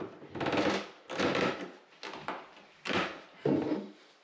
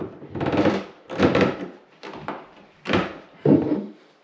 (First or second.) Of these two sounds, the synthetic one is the second